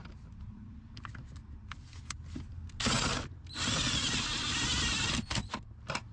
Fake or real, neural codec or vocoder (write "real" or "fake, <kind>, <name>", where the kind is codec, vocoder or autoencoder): real